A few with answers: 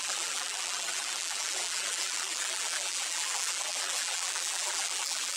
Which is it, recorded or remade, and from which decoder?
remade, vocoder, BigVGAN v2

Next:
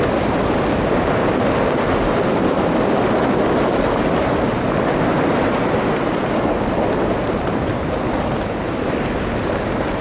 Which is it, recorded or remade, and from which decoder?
recorded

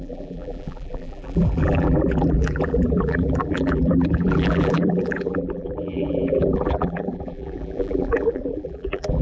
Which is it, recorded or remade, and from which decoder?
remade, vocoder, BigVGAN v2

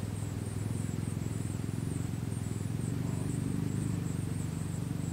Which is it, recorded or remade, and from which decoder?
remade, vocoder, BigVGAN v2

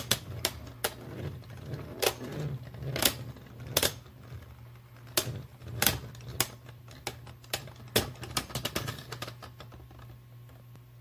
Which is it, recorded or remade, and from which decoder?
recorded